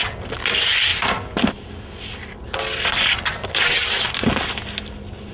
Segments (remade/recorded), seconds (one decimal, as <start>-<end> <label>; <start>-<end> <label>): 0.0-5.3 recorded